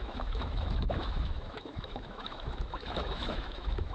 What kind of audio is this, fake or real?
fake